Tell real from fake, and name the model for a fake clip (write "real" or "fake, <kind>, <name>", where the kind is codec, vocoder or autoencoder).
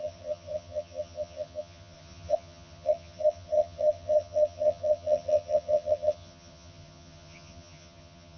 fake, vocoder, HiFi-GAN